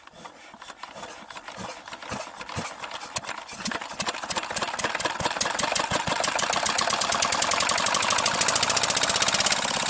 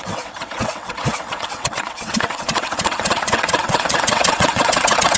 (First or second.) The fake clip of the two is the second